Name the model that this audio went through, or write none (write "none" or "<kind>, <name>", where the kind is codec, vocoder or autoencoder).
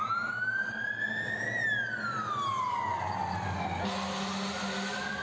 none